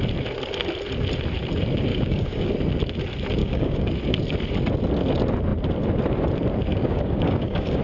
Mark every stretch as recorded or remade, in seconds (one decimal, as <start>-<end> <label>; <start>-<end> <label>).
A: 0.0-1.9 recorded; 1.9-2.5 remade; 2.5-3.4 recorded; 3.4-3.9 remade; 3.9-6.7 recorded; 6.7-7.8 remade